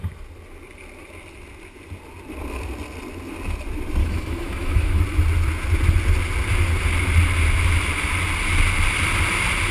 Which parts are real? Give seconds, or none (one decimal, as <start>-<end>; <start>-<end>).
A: 0.0-4.0; 5.0-9.7